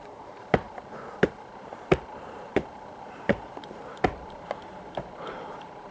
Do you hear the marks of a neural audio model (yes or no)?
yes